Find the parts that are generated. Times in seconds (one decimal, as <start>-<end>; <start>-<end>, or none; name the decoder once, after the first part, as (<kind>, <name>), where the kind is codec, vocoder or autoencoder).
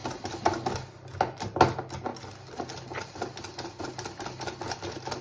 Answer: none